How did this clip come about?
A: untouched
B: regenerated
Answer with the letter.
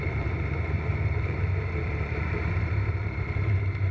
B